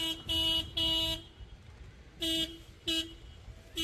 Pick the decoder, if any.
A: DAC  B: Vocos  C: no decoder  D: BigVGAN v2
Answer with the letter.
C